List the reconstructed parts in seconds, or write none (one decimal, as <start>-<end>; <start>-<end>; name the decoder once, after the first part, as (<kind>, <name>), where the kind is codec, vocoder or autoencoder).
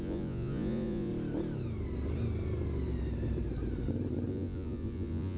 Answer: 0.0-1.1 (vocoder, Vocos); 4.3-5.4